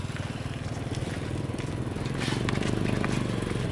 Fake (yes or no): no